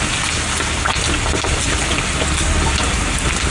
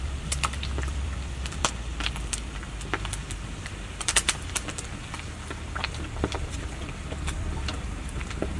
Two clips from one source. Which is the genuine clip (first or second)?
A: first